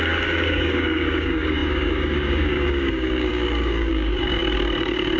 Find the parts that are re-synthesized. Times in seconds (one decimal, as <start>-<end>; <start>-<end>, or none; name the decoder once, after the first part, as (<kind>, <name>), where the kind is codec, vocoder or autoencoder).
0.0-5.2 (codec, DAC)